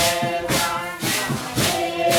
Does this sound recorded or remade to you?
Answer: recorded